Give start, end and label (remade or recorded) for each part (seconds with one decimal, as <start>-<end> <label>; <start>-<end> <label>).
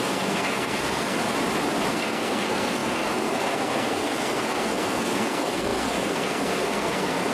0.0-1.2 remade; 1.2-1.9 recorded; 1.9-7.3 remade